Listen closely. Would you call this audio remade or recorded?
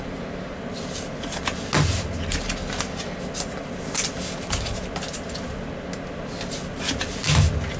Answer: recorded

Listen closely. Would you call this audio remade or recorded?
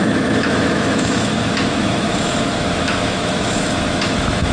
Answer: remade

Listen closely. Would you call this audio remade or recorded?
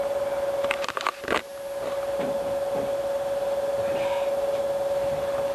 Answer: recorded